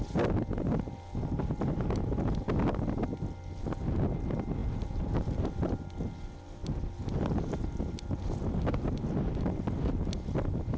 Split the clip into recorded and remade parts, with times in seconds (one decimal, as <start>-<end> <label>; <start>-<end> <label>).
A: 0.0-10.8 recorded